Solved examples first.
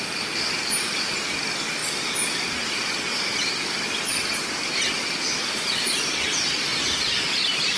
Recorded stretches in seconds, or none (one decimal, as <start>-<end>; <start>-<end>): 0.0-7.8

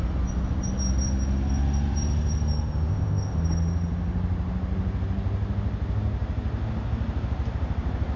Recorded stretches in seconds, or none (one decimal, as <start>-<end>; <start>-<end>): 0.0-2.9; 3.4-8.2

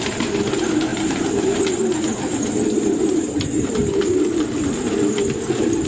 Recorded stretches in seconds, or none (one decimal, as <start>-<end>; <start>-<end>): 0.0-0.9; 1.6-2.3; 3.8-5.9